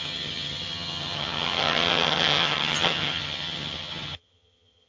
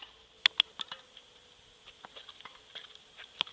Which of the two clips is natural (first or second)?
second